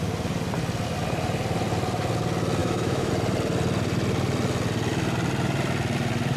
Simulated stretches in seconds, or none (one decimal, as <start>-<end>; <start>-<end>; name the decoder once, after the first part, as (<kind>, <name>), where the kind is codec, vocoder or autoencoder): 2.6-3.1 (autoencoder, DAC-VAE)